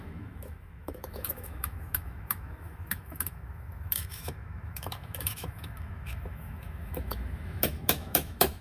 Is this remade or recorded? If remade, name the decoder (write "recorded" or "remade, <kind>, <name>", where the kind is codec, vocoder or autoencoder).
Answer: remade, autoencoder, DAC-VAE